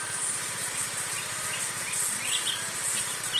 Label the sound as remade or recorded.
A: recorded